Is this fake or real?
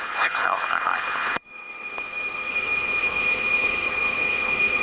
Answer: fake